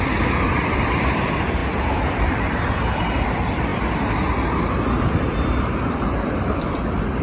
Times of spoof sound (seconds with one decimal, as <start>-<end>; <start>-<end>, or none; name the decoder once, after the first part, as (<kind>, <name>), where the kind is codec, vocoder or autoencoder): 0.0-3.7 (vocoder, BigVGAN v2); 5.6-7.2